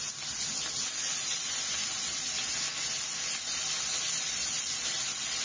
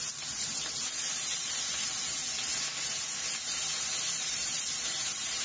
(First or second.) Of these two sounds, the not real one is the second